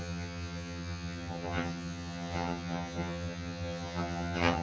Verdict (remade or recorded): remade